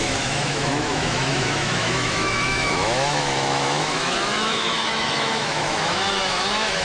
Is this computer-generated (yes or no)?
yes